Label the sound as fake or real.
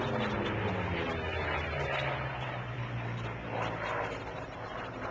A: real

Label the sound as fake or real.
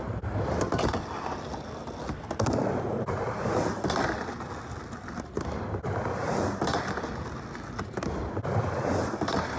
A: real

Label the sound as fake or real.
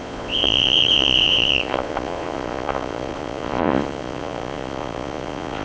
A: fake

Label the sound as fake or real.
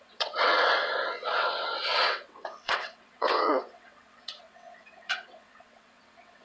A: fake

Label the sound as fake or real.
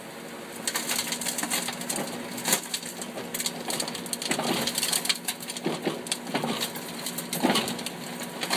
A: real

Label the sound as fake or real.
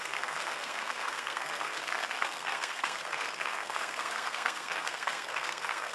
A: fake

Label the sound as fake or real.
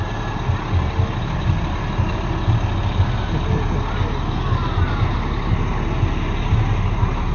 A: real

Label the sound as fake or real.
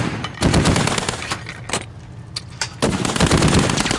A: real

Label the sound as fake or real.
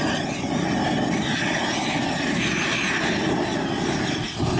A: real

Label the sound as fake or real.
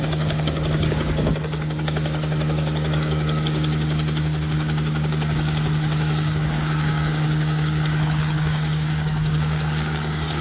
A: fake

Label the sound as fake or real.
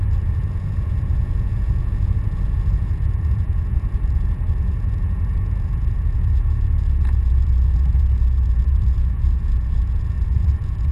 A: fake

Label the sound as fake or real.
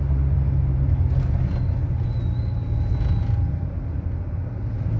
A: real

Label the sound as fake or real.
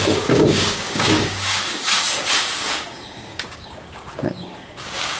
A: fake